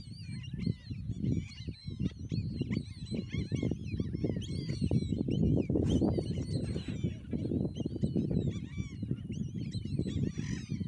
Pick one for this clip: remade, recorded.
recorded